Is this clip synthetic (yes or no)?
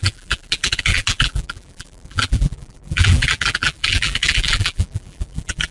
yes